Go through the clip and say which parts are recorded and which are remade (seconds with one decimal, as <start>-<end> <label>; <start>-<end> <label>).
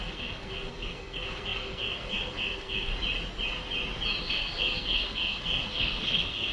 0.0-2.9 remade; 2.9-4.2 recorded; 4.2-6.5 remade